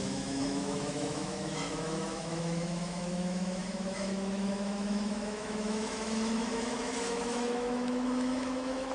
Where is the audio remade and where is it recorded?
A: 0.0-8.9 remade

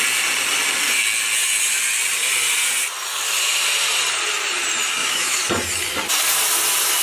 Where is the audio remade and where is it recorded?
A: 0.0-5.0 recorded; 5.0-5.5 remade; 5.5-7.0 recorded